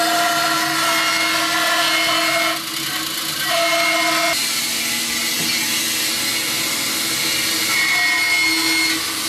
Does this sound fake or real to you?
real